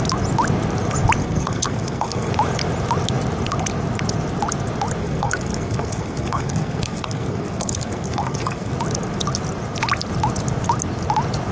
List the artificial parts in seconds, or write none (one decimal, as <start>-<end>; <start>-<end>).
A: 1.2-2.3; 5.0-8.7